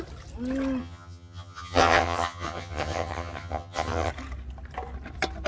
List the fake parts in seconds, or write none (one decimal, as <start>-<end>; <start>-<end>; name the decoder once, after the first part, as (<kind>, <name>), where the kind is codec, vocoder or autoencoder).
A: 0.8-4.1 (vocoder, HiFi-GAN)